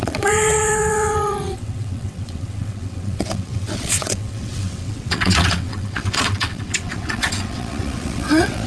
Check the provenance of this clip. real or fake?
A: fake